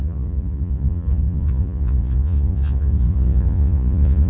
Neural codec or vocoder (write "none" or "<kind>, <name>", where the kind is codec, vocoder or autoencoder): vocoder, Vocos